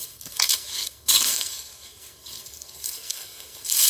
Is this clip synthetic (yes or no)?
yes